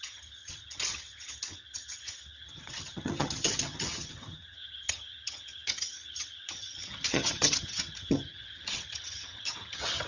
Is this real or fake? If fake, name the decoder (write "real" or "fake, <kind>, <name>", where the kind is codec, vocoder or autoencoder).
fake, vocoder, HiFi-GAN